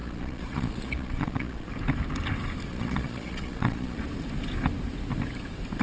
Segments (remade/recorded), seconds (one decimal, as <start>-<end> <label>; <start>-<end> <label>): 0.0-1.7 remade; 1.7-2.7 recorded; 2.7-4.0 remade; 4.0-5.8 recorded